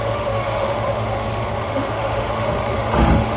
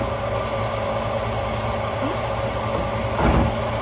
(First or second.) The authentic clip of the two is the second